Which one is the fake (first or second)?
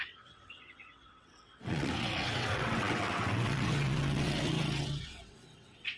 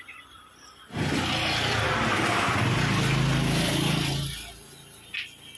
first